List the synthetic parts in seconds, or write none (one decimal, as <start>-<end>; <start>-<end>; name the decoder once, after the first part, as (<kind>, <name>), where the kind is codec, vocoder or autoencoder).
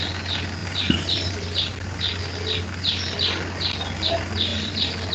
0.6-1.3 (vocoder, BigVGAN v2); 4.5-5.1